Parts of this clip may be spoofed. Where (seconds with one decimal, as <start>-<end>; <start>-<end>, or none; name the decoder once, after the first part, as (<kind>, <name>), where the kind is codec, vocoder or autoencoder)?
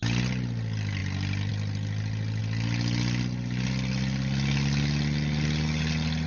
none